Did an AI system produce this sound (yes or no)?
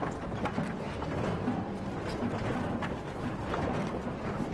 no